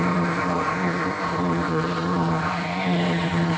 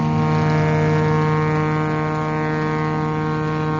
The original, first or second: second